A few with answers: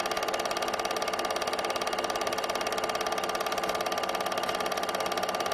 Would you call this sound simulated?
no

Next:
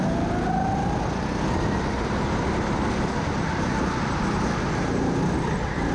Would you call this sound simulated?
no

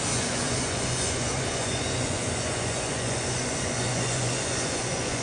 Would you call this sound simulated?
yes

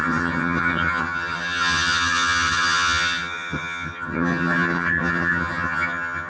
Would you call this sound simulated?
yes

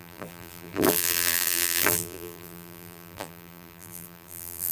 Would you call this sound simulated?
yes